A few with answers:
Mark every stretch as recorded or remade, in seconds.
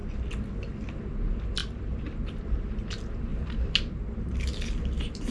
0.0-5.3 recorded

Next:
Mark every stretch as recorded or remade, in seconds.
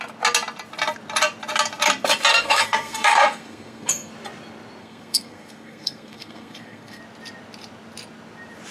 0.0-2.3 recorded; 2.3-4.1 remade; 4.1-4.8 recorded; 4.8-7.0 remade; 7.0-8.7 recorded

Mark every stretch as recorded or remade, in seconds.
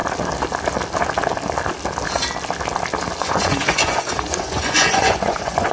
0.0-3.2 recorded; 3.2-5.7 remade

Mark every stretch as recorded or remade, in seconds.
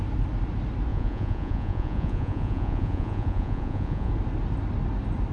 0.0-0.9 recorded; 0.9-4.1 remade; 4.1-5.3 recorded